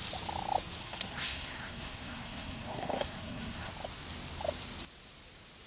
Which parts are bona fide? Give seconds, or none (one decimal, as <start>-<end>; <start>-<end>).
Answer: 0.0-0.8; 3.7-5.7